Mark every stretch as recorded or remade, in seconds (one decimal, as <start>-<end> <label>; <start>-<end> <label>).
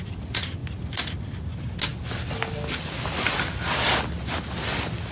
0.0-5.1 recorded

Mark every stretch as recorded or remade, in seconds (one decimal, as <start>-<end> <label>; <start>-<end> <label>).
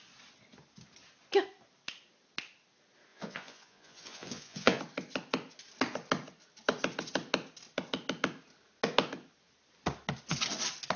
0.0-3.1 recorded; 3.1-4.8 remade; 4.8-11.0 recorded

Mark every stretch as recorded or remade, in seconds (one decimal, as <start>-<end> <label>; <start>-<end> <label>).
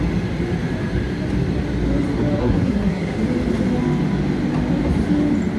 0.0-2.4 recorded; 2.4-3.2 remade; 3.2-5.6 recorded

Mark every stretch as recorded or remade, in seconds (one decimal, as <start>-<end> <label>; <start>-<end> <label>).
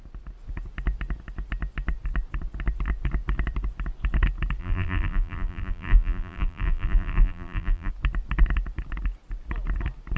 0.0-4.6 recorded; 4.6-7.9 remade; 7.9-10.2 recorded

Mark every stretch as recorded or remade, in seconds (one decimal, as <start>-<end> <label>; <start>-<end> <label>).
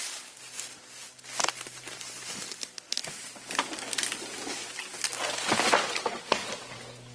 0.0-7.1 recorded